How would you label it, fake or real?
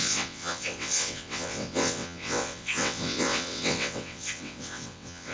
fake